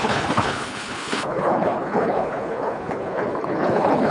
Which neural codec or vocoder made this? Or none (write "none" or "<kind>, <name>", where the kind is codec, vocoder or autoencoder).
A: codec, HILCodec